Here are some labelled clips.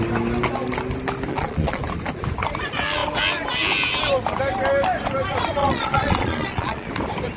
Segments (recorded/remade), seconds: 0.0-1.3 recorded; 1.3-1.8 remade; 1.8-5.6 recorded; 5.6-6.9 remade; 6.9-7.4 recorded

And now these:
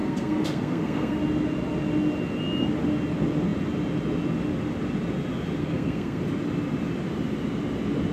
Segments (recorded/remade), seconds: 0.0-1.2 remade; 1.2-5.6 recorded; 5.6-6.2 remade; 6.2-8.1 recorded